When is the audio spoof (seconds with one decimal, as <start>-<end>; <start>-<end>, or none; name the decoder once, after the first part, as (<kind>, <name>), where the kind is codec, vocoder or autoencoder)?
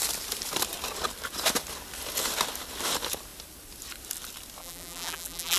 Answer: 4.6-5.6 (vocoder, BigVGAN v2)